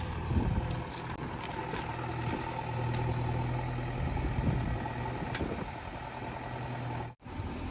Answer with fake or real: real